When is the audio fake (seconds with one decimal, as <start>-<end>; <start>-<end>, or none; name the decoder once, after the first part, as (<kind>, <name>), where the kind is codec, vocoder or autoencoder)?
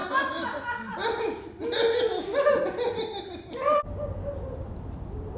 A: none